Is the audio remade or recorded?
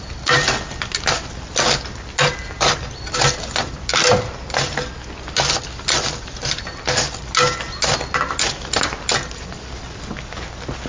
recorded